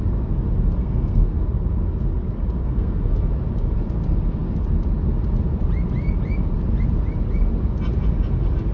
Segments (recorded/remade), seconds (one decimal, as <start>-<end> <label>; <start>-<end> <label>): 0.0-0.8 recorded; 0.8-1.4 remade; 1.4-2.6 recorded; 2.6-3.3 remade; 3.3-8.7 recorded